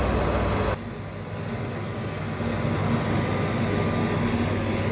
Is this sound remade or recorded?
recorded